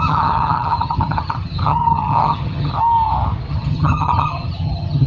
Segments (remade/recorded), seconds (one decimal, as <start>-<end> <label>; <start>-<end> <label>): 0.0-2.7 remade; 2.7-3.5 recorded; 3.5-5.1 remade